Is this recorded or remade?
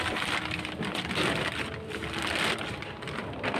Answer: recorded